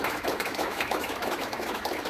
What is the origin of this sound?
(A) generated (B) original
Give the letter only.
A